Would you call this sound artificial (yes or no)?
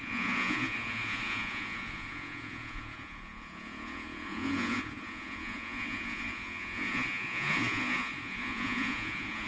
yes